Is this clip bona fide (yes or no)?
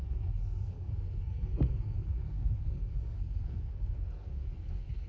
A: no